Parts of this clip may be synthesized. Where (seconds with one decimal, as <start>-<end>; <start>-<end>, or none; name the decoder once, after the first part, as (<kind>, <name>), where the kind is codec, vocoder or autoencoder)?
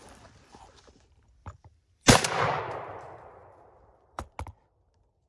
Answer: 1.4-2.6 (vocoder, BigVGAN v2); 3.4-4.3